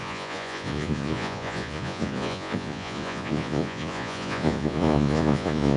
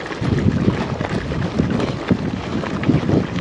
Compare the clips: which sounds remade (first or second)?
first